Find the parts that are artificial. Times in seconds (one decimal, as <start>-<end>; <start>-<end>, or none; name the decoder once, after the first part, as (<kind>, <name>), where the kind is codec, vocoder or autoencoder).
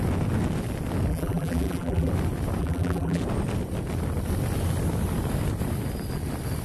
1.1-2.1 (vocoder, BigVGAN v2); 2.6-3.2